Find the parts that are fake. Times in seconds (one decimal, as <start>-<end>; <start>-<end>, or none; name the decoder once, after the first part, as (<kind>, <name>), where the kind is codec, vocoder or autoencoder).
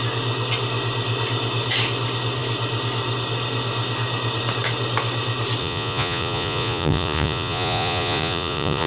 5.6-8.9 (vocoder, Vocos)